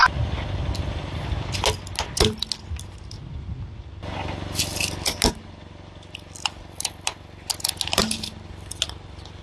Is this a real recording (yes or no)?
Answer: yes